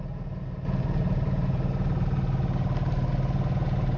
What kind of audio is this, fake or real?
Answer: real